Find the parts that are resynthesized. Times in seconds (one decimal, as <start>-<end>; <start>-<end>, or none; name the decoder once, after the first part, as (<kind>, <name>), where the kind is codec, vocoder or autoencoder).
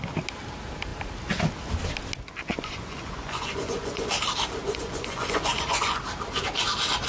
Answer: 2.5-4.1 (vocoder, Vocos); 4.6-6.0